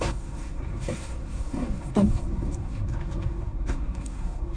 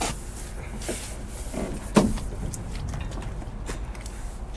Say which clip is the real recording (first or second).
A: second